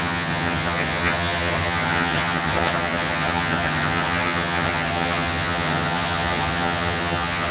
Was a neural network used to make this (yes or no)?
yes